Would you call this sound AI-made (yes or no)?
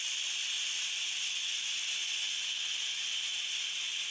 no